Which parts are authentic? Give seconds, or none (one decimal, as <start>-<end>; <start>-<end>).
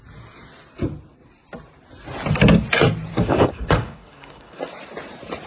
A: 0.0-3.1; 4.6-5.5